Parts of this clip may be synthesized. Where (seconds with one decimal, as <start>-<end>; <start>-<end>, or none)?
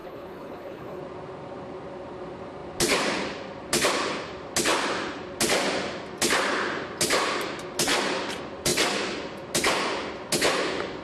0.0-1.0